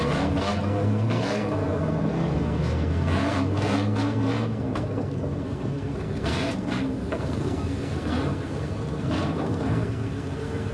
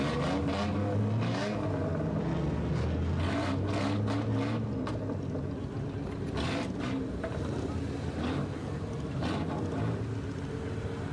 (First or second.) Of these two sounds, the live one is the second